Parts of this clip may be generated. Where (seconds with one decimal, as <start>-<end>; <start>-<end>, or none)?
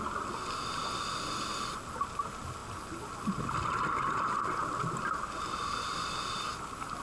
2.6-3.1